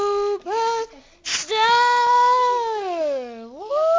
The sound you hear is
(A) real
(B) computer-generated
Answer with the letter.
A